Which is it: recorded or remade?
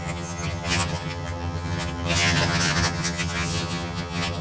remade